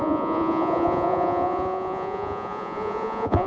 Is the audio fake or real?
fake